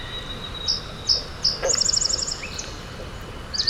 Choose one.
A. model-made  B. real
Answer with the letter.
B